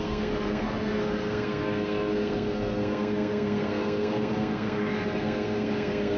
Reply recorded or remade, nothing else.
remade